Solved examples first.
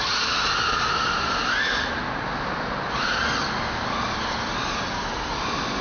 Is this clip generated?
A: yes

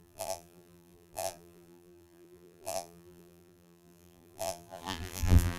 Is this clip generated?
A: yes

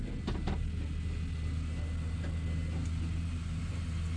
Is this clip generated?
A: no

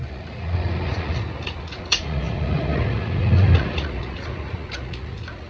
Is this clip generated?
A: yes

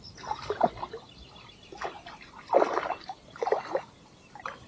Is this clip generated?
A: no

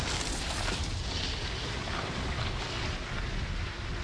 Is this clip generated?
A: no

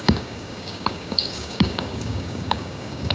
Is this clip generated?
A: yes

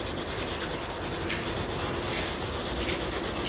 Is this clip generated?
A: no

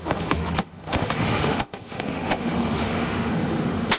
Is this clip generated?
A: yes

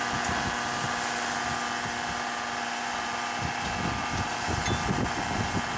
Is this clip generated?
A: no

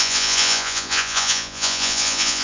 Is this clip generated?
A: yes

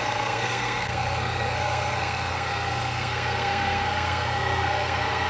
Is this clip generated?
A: yes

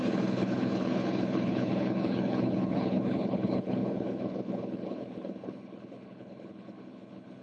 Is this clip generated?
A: yes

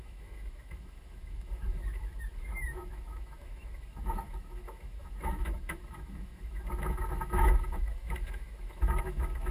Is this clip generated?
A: yes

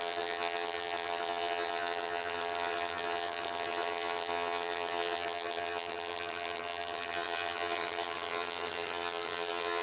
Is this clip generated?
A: yes